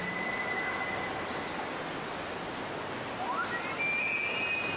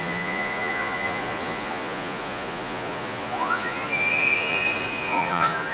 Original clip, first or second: first